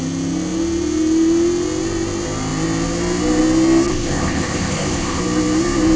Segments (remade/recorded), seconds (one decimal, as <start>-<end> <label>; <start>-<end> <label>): 0.0-3.9 recorded; 3.9-5.2 remade; 5.2-6.0 recorded